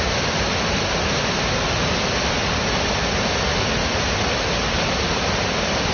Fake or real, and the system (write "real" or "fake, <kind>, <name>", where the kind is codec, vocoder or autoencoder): real